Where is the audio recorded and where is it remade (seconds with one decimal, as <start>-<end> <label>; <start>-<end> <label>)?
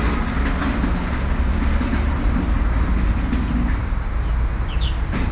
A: 0.0-5.3 recorded